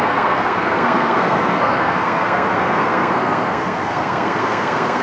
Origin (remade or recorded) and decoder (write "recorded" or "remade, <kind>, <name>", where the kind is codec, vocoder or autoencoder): remade, codec, SNAC